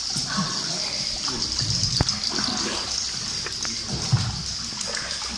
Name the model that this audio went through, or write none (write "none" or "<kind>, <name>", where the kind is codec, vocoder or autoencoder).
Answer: none